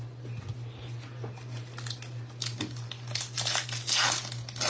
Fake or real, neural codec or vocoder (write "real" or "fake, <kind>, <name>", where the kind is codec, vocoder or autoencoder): real